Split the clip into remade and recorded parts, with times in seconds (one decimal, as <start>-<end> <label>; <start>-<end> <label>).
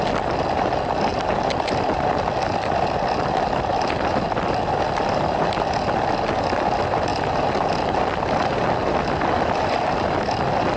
0.0-10.8 recorded